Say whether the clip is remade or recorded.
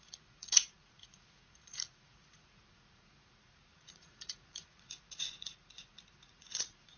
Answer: remade